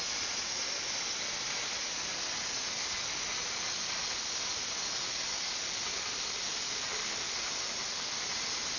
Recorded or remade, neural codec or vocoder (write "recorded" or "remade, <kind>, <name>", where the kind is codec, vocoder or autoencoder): recorded